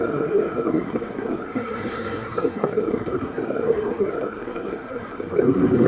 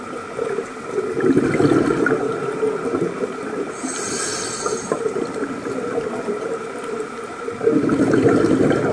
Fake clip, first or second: first